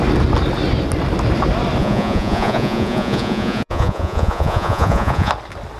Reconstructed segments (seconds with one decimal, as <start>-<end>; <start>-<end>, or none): 1.8-5.3